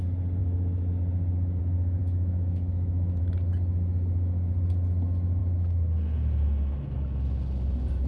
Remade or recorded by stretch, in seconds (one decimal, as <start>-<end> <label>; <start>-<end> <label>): 0.0-2.0 recorded; 2.0-3.2 remade; 3.2-8.1 recorded

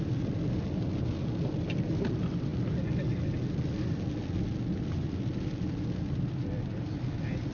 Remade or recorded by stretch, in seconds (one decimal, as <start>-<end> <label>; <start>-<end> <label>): 0.0-7.5 recorded

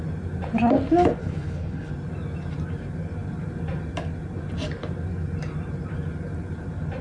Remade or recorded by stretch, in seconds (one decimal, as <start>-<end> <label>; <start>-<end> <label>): 0.0-1.2 recorded; 1.2-1.9 remade; 1.9-7.0 recorded

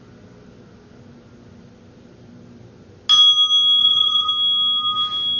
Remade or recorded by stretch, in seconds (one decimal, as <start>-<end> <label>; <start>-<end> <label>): 0.0-3.8 recorded; 3.8-4.3 remade; 4.3-5.4 recorded

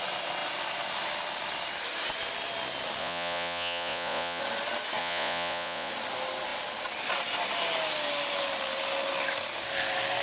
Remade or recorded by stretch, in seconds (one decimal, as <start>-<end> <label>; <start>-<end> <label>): 0.0-3.0 recorded; 3.0-4.4 remade; 4.4-5.0 recorded; 5.0-5.9 remade; 5.9-10.2 recorded